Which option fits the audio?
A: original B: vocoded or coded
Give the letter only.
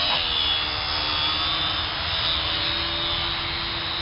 A